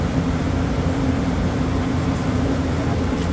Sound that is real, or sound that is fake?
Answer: real